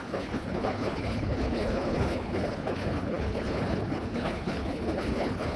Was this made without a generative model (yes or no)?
no